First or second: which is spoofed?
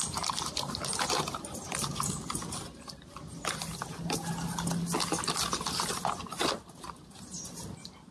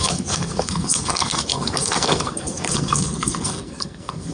second